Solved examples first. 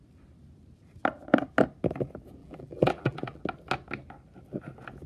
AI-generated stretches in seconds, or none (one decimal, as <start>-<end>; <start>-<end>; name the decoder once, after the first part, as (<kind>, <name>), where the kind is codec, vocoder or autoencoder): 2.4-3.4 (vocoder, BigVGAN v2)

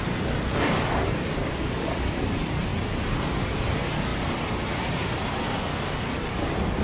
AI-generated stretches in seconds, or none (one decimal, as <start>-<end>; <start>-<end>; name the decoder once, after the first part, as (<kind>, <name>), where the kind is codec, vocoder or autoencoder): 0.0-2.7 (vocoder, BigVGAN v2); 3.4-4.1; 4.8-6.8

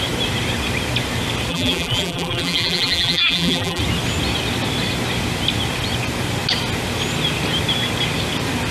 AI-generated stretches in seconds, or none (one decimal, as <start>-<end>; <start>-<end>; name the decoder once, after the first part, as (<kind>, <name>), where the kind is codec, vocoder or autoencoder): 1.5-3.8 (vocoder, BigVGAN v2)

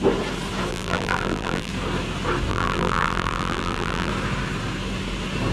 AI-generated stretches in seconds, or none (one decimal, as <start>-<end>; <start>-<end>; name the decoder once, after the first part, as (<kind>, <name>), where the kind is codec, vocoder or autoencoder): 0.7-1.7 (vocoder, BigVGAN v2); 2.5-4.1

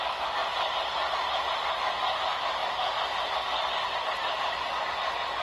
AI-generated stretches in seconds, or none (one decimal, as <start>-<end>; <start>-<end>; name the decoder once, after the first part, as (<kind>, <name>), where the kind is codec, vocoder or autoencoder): 0.4-1.1 (vocoder, BigVGAN v2)

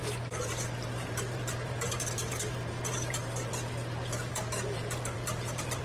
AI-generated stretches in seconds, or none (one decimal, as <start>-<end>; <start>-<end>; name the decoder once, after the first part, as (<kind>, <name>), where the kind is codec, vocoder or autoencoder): 0.0-3.5 (vocoder, BigVGAN v2); 4.3-5.8